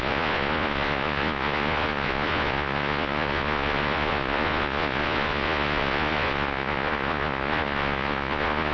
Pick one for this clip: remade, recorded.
remade